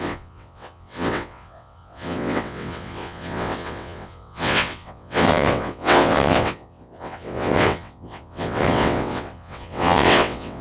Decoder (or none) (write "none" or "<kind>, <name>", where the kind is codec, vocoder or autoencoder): vocoder, WaveNeXt